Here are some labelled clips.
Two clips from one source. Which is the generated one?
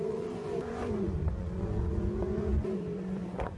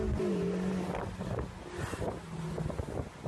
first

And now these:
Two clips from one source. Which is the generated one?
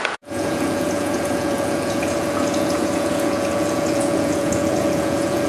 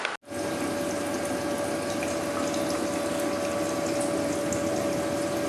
first